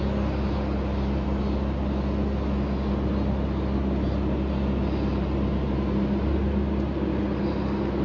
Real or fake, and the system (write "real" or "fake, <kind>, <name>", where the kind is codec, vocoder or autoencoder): real